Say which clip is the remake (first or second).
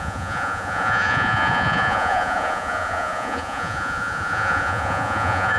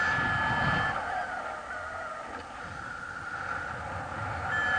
first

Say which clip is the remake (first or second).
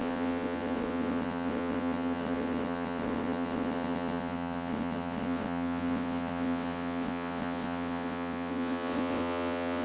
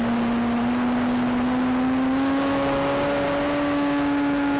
first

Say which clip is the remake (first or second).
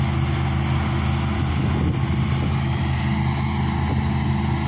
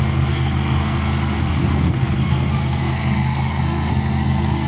second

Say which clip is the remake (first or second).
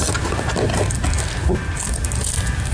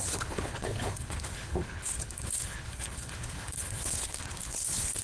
second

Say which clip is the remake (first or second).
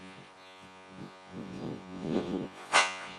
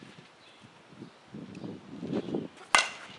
first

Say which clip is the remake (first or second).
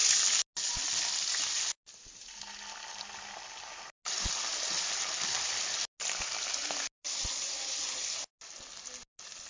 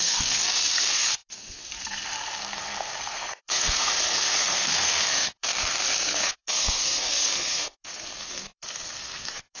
second